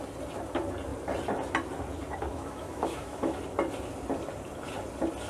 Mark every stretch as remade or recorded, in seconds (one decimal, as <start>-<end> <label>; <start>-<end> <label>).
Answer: 0.0-2.3 recorded; 2.3-3.4 remade; 3.4-5.3 recorded